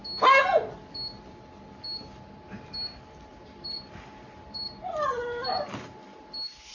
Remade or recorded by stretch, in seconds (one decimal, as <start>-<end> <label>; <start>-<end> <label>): 0.0-3.3 recorded; 3.3-6.2 remade; 6.2-6.7 recorded